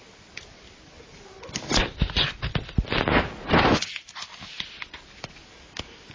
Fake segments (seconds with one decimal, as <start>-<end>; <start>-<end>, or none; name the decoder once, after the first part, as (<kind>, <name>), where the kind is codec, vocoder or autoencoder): none